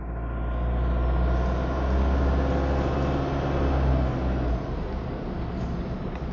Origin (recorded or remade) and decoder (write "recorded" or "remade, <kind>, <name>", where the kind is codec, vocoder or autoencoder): recorded